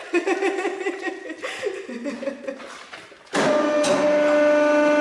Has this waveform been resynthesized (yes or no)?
no